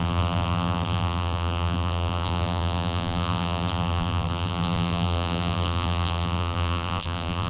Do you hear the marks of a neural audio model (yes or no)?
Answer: yes